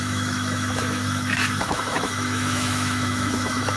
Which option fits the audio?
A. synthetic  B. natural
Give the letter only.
A